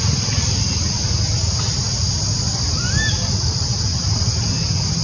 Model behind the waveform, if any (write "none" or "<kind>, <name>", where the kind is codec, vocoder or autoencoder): none